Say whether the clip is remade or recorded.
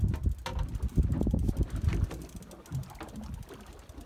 recorded